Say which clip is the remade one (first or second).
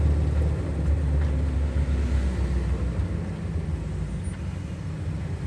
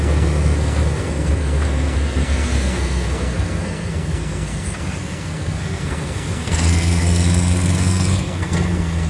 second